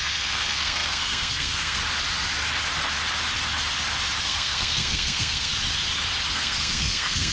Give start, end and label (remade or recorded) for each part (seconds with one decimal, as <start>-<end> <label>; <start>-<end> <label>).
0.0-1.8 remade; 1.8-4.2 recorded; 4.2-5.5 remade; 5.5-6.3 recorded; 6.3-7.3 remade